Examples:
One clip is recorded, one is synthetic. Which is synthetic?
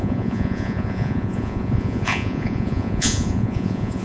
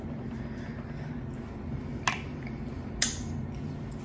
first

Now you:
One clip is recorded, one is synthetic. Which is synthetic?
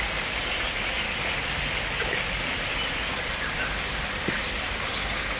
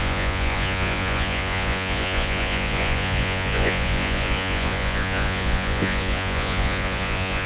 second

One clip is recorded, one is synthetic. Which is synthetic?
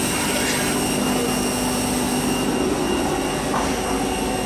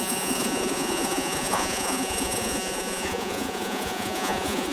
second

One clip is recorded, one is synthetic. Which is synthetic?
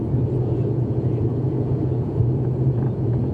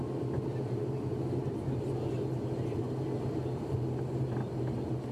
first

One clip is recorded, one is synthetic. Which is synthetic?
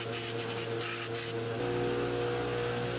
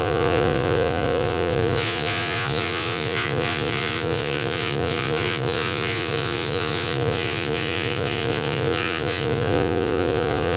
second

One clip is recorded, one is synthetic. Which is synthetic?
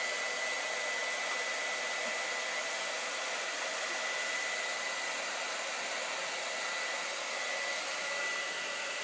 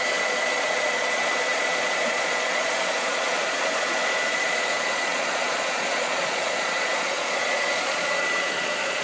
second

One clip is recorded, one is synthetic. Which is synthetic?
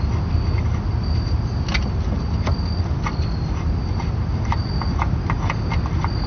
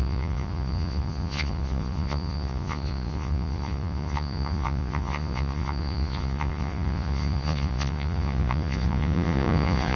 second